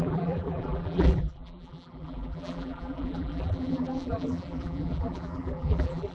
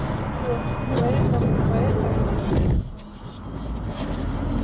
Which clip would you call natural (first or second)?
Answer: second